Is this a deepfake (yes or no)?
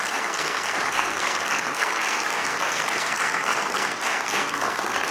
yes